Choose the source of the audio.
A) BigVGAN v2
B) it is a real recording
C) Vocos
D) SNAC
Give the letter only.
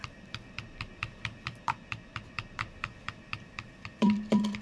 A